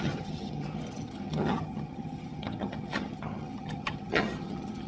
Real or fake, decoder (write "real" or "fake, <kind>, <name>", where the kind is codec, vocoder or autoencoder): fake, vocoder, HiFi-GAN